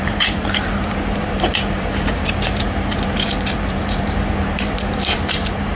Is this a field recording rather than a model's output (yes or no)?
no